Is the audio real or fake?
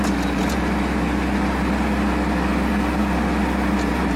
real